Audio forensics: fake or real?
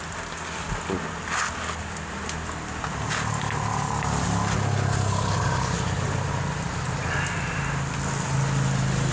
real